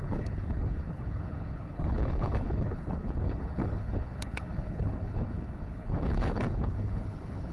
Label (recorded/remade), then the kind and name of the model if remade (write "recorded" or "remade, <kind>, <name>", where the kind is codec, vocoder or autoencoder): remade, codec, HILCodec